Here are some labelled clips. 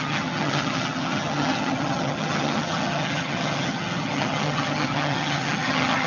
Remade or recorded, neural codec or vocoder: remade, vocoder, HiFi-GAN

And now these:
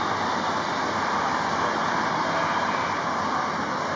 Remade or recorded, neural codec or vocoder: recorded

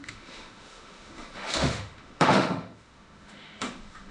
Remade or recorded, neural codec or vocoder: remade, autoencoder, DAC-VAE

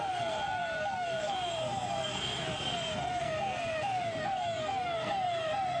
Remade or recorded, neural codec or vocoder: remade, codec, SNAC